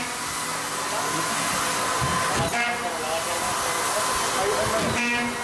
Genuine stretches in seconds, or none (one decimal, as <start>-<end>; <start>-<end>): 0.0-5.4